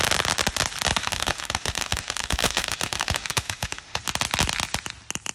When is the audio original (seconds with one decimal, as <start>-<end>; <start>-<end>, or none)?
0.0-1.0; 4.0-5.3